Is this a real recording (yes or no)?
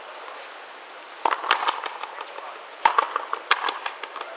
no